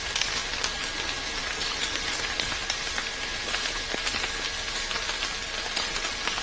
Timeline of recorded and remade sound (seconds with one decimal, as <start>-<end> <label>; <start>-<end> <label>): 0.0-3.3 recorded; 3.3-3.8 remade; 3.8-6.4 recorded